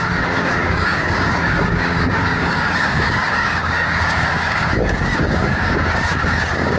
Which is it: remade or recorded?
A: remade